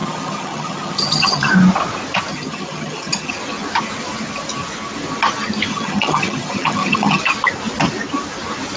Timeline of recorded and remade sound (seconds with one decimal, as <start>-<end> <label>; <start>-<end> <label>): 0.0-1.5 remade; 1.5-2.3 recorded; 2.3-3.3 remade; 3.3-5.7 recorded; 5.7-7.2 remade; 7.2-8.8 recorded